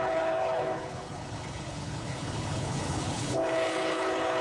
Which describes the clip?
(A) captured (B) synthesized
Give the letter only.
B